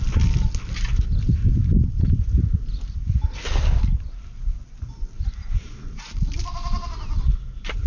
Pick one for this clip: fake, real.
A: real